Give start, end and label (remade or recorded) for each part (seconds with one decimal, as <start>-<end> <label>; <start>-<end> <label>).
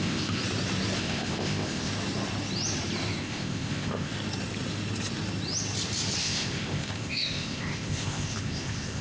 0.0-0.4 remade; 0.4-1.0 recorded; 1.0-1.9 remade; 1.9-3.2 recorded; 3.2-4.1 remade; 4.1-6.2 recorded; 6.2-9.0 remade